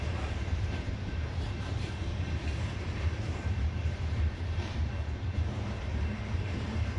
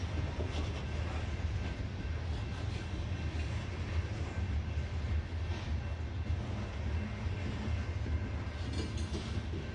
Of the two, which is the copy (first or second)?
first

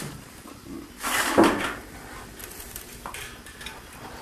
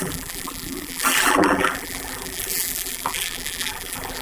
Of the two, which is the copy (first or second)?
second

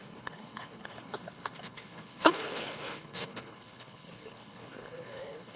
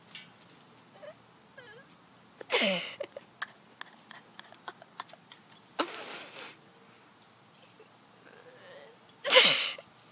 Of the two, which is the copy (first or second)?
first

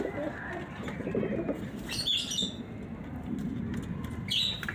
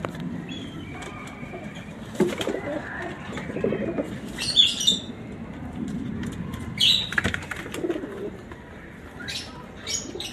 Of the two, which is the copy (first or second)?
second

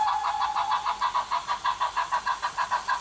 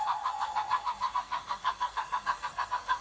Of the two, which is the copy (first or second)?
second